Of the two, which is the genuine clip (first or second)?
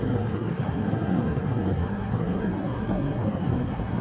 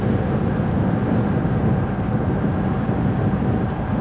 second